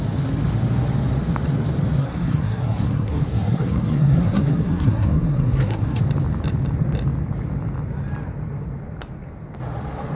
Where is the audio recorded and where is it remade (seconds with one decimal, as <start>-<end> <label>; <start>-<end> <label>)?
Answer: 0.0-2.0 recorded; 2.0-6.0 remade; 6.0-10.2 recorded